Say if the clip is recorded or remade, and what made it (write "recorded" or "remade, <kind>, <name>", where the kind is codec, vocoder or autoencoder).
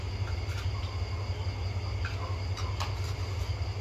recorded